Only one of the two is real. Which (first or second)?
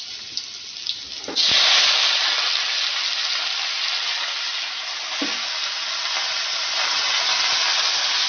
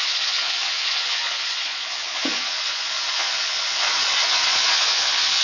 first